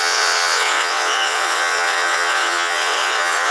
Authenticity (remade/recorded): remade